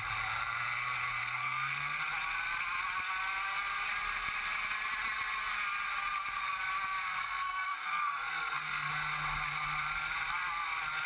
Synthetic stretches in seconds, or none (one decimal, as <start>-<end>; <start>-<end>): 1.2-2.0; 7.2-8.9